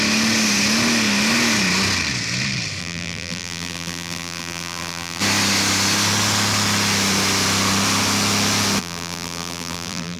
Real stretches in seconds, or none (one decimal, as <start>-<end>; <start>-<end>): 0.0-2.8; 5.2-8.8